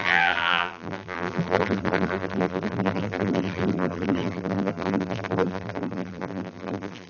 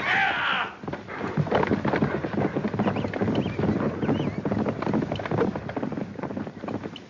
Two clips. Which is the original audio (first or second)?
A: second